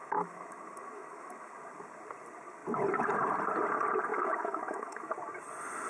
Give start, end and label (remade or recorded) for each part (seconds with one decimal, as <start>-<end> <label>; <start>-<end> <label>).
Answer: 0.0-1.5 remade; 1.5-4.1 recorded; 4.1-5.1 remade; 5.1-5.9 recorded